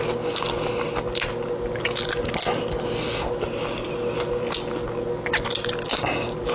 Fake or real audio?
real